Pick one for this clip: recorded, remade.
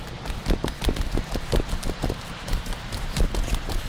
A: recorded